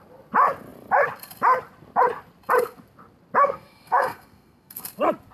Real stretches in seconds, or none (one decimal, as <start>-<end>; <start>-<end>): 0.0-3.4; 4.8-5.3